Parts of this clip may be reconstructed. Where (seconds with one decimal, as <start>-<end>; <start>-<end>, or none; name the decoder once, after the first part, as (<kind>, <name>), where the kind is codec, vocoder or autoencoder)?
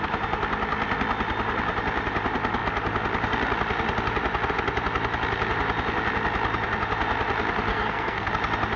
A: 7.7-8.3 (codec, SNAC)